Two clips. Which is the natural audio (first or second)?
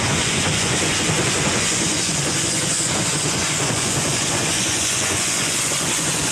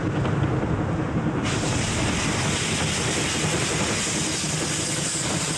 second